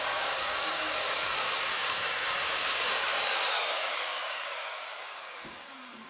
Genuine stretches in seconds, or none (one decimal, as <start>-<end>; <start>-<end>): none